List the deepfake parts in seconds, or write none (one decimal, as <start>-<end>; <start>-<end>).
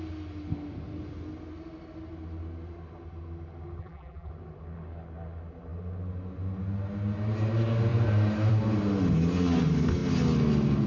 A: 3.8-4.3